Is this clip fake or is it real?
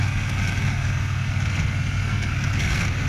fake